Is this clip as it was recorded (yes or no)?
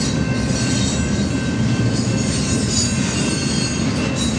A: yes